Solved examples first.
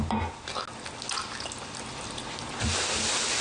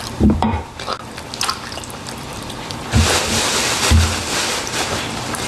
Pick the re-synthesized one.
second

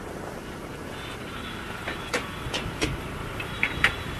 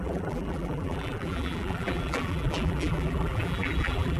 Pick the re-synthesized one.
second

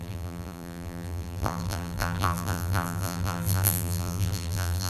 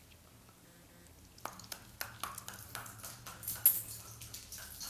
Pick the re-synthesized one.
first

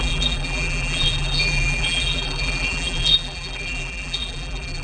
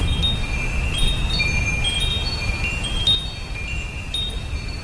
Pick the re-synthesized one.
first